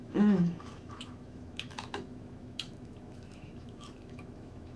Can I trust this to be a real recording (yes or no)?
no